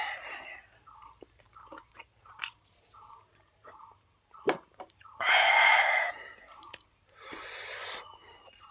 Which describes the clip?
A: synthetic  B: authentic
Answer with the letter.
A